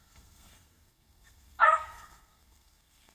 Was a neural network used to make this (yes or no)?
yes